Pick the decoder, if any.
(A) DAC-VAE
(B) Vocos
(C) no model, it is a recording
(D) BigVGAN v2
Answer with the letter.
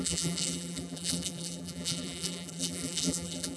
D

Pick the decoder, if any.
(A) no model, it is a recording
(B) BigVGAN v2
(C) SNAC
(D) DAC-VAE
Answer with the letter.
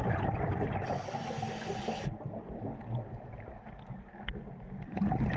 A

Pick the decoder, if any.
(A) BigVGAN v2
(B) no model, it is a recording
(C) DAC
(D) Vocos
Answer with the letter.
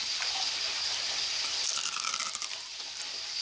A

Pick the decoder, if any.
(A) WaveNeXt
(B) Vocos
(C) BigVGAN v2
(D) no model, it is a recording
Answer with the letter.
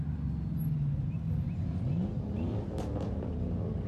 D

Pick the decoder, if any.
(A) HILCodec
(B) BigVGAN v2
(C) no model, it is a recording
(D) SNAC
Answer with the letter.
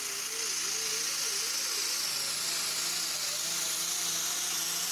C